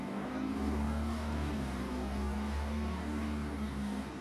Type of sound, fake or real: fake